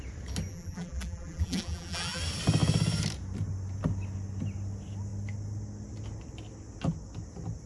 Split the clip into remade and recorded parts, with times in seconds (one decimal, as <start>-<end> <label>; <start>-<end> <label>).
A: 0.0-0.5 recorded; 0.5-2.2 remade; 2.2-7.7 recorded